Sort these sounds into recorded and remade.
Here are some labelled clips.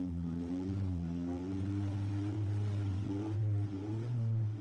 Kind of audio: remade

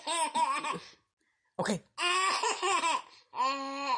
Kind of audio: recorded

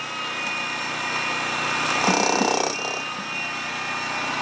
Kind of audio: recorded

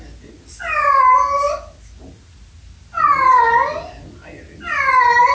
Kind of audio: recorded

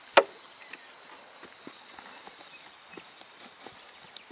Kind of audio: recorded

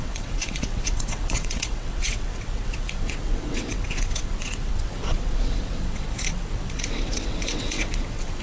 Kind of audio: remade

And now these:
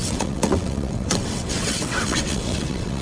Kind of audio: remade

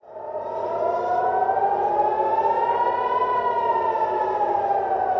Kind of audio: recorded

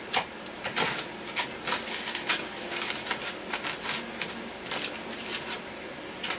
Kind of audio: recorded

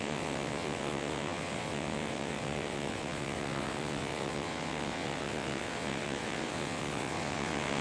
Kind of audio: remade